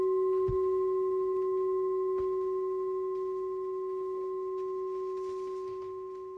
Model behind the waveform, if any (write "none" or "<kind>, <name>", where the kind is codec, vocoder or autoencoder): none